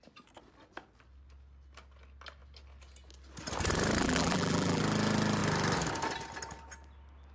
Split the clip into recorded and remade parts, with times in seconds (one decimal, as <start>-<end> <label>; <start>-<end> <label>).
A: 0.0-4.0 recorded; 4.0-4.8 remade; 4.8-7.3 recorded